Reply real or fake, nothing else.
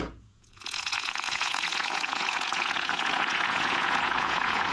fake